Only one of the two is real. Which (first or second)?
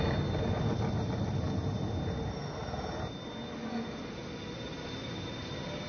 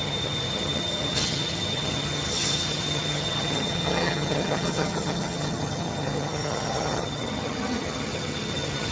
first